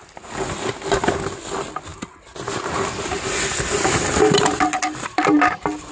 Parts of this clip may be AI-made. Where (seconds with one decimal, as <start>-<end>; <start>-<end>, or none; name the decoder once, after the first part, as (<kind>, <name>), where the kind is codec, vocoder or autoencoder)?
none